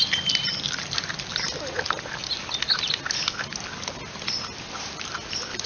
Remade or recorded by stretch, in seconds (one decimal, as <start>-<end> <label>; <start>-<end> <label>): 0.0-0.5 recorded; 0.5-1.3 remade; 1.3-5.7 recorded